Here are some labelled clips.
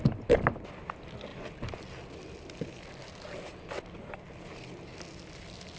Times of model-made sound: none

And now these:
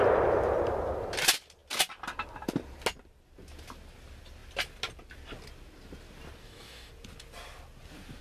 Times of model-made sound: 6.4-6.9

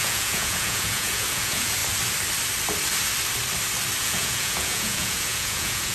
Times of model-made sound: 0.0-1.8; 4.0-5.9

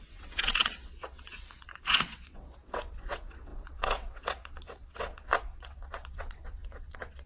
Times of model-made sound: 0.0-7.3

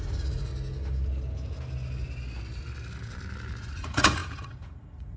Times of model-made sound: 0.0-0.5; 3.6-5.2